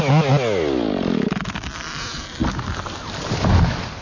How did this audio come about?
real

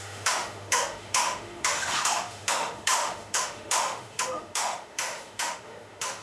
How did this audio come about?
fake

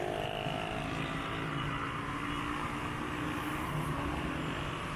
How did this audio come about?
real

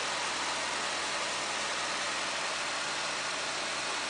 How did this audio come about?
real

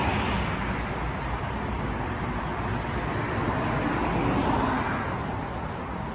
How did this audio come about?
real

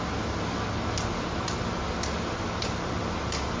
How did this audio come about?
real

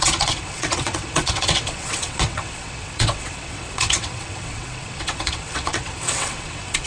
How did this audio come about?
fake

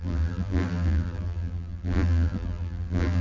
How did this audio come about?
fake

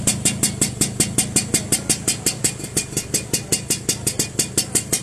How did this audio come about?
real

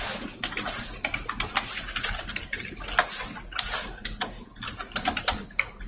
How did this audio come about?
real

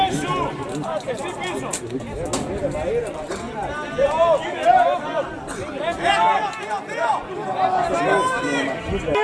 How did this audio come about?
real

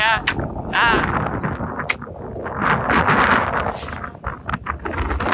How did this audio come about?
real